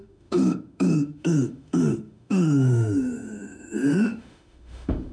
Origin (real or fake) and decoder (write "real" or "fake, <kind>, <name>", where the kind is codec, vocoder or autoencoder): fake, autoencoder, DAC-VAE